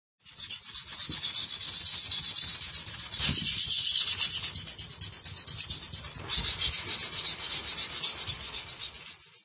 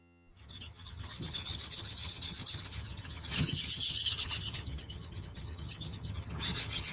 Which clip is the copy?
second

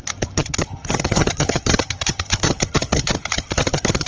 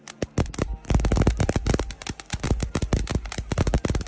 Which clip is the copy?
first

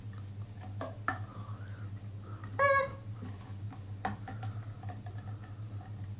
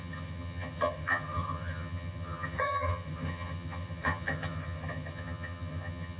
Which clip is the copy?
second